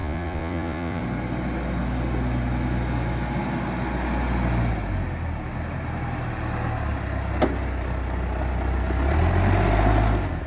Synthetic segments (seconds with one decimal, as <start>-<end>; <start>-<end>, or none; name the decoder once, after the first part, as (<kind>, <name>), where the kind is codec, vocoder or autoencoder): 0.0-1.0 (vocoder, Vocos)